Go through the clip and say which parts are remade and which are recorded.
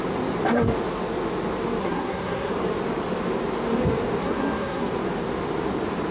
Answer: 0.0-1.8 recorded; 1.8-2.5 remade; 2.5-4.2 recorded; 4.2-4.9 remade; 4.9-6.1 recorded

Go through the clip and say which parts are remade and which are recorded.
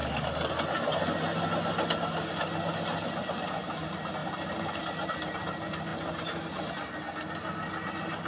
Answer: 0.0-0.5 remade; 0.5-8.3 recorded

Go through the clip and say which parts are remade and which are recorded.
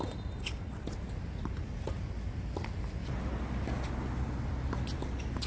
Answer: 0.0-5.5 recorded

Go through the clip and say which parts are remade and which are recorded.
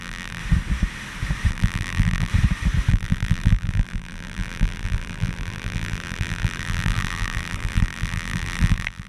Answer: 0.0-0.4 remade; 0.4-1.5 recorded; 1.5-2.3 remade; 2.3-2.9 recorded; 2.9-9.1 remade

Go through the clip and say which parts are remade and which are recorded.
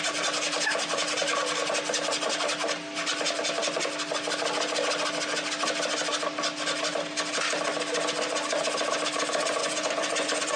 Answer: 0.0-9.6 recorded; 9.6-10.6 remade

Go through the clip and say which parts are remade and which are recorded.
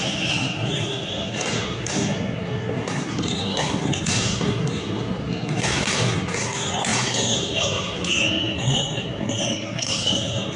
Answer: 0.0-10.6 remade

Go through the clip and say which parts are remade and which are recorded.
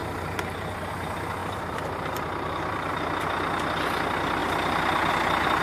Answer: 0.0-0.9 remade; 0.9-1.4 recorded; 1.4-2.9 remade; 2.9-5.6 recorded